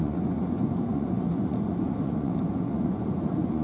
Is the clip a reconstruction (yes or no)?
yes